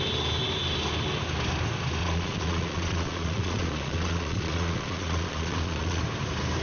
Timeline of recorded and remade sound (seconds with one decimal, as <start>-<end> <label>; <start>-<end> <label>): 0.0-2.0 recorded; 2.0-6.0 remade; 6.0-6.6 recorded